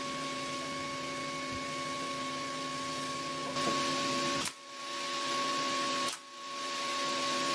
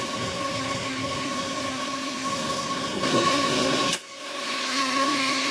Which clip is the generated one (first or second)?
second